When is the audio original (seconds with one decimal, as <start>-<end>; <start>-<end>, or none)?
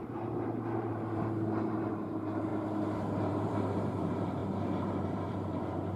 2.5-3.0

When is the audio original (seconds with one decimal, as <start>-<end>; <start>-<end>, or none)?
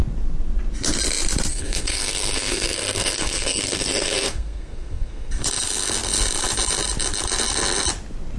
0.0-1.5; 5.3-8.4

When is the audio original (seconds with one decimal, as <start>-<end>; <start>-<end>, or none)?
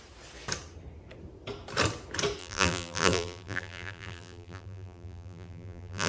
0.0-2.4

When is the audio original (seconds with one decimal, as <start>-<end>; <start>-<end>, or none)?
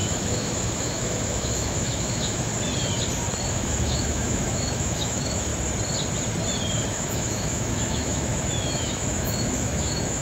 2.5-3.5; 5.5-6.9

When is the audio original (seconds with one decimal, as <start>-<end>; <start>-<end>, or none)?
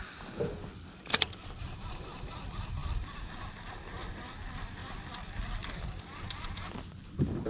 0.0-7.5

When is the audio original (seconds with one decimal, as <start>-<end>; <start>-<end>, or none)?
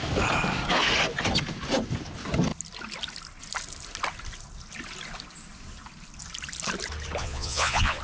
0.0-7.2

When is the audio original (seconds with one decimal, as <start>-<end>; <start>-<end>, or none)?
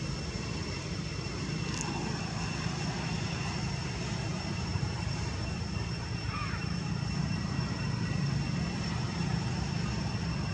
0.0-1.1; 1.6-4.3; 9.3-10.5